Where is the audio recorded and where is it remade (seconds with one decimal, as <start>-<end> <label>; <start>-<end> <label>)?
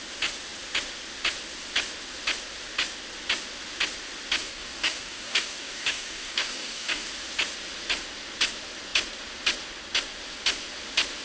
0.0-4.4 recorded; 4.4-7.1 remade; 7.1-11.2 recorded